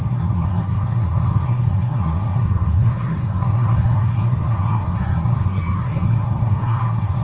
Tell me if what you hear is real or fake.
fake